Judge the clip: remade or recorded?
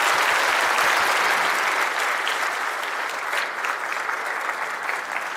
recorded